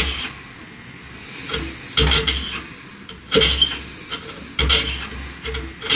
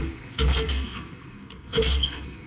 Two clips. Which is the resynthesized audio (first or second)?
second